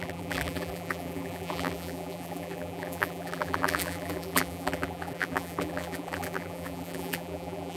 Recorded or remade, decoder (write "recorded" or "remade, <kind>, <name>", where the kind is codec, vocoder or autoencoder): remade, vocoder, BigVGAN v2